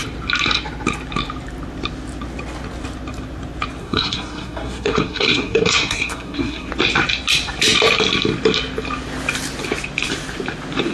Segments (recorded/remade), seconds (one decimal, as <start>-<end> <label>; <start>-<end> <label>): 0.0-3.8 recorded; 3.8-6.7 remade; 6.7-10.9 recorded